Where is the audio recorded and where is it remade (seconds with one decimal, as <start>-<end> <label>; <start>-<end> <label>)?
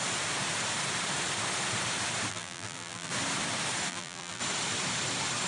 0.0-2.3 recorded; 2.3-3.1 remade; 3.1-3.9 recorded; 3.9-4.4 remade; 4.4-5.5 recorded